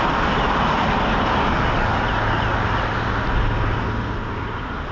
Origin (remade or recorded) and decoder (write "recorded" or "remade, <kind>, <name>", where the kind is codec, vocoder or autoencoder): recorded